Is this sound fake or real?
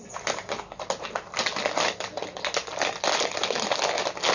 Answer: real